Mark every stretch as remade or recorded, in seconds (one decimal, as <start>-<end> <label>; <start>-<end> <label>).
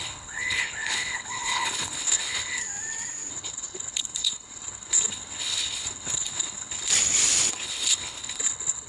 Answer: 0.0-2.6 remade; 2.6-3.3 recorded; 3.3-6.9 remade; 6.9-7.5 recorded; 7.5-8.9 remade